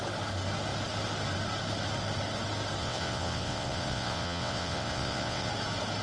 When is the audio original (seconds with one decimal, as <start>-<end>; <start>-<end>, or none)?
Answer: 0.0-2.8; 5.5-6.0